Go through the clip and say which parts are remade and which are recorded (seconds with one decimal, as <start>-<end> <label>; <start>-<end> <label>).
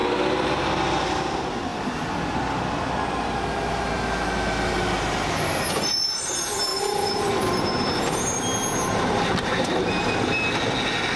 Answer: 0.0-6.7 recorded; 6.7-9.9 remade; 9.9-11.2 recorded